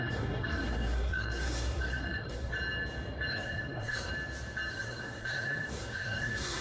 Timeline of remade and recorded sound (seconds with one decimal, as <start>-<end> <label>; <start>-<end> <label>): 0.0-2.5 remade; 2.5-3.3 recorded; 3.3-4.1 remade; 4.1-4.7 recorded; 4.7-6.6 remade

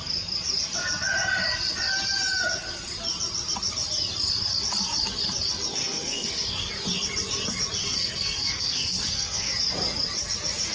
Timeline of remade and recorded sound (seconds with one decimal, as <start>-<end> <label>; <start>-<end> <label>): 0.0-5.8 recorded; 5.8-6.7 remade; 6.7-7.8 recorded; 7.8-9.5 remade; 9.5-10.7 recorded